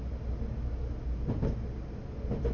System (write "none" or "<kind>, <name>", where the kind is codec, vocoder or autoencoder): none